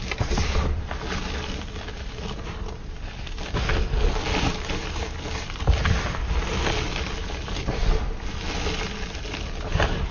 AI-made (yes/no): no